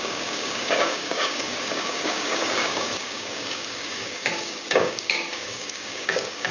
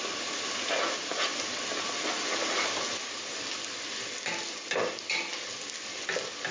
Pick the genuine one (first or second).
second